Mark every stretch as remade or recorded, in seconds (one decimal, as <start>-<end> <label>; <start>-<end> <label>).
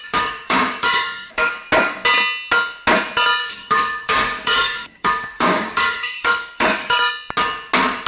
0.0-1.5 remade; 1.5-3.4 recorded; 3.4-7.1 remade; 7.1-8.1 recorded